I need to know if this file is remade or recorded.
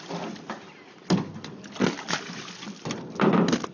recorded